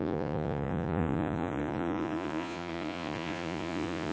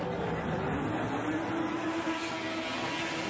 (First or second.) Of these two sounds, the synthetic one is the first